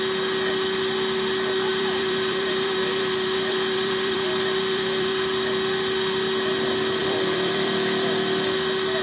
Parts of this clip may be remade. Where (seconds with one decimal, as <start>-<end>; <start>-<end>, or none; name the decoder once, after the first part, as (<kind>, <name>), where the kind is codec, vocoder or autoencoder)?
1.7-5.1 (vocoder, BigVGAN v2); 7.0-8.1